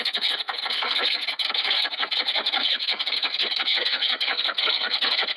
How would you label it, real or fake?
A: fake